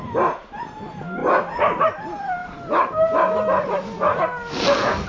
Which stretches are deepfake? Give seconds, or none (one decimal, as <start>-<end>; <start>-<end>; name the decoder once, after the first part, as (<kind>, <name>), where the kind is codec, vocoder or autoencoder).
none